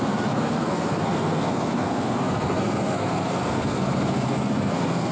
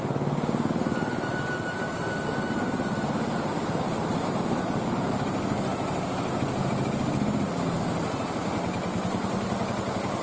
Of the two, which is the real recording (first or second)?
second